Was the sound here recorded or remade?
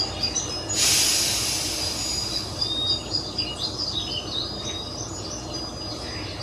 recorded